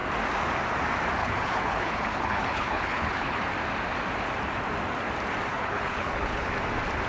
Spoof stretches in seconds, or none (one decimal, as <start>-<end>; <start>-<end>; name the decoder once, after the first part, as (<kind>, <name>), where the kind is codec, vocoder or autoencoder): 1.2-3.4 (codec, HILCodec); 5.5-6.5